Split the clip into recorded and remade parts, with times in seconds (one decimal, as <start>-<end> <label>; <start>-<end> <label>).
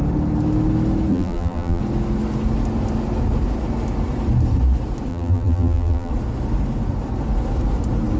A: 0.0-1.1 recorded; 1.1-1.8 remade; 1.8-5.1 recorded; 5.1-6.1 remade; 6.1-8.2 recorded